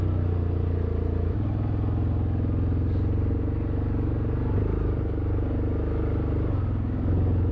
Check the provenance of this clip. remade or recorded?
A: recorded